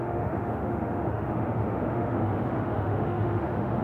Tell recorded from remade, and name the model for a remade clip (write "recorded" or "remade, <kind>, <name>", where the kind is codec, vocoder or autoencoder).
remade, autoencoder, DAC-VAE